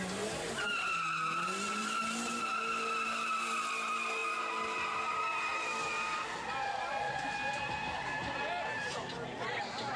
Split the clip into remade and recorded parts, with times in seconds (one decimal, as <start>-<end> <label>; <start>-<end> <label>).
0.0-1.8 recorded; 1.8-2.6 remade; 2.6-10.0 recorded